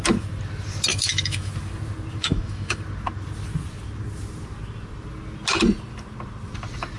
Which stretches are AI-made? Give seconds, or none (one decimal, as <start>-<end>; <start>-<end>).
0.9-1.5; 2.2-2.8

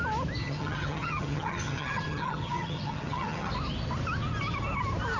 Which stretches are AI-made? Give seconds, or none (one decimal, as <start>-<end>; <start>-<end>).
0.4-3.5

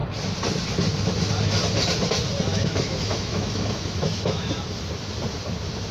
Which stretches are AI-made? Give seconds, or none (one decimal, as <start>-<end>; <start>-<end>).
2.5-4.5

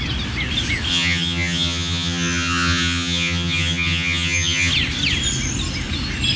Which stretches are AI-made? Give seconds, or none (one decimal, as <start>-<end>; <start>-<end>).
0.9-4.7